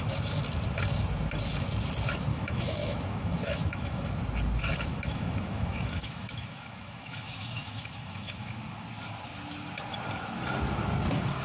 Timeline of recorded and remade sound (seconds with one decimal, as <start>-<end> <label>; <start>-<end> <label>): 0.0-2.3 recorded; 2.3-4.2 remade; 4.2-4.9 recorded; 4.9-8.5 remade; 8.5-11.4 recorded